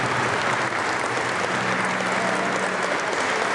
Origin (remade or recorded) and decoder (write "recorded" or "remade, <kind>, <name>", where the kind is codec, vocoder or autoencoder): recorded